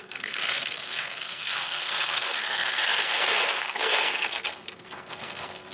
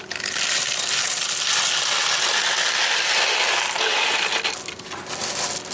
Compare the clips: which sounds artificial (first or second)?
first